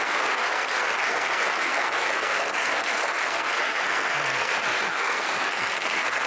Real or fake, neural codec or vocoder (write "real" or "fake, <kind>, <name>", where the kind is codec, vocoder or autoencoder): fake, codec, SNAC